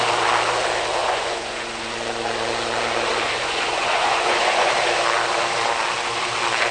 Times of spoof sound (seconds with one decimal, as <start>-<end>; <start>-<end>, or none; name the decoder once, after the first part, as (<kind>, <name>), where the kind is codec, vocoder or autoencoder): 1.0-4.7 (vocoder, Vocos)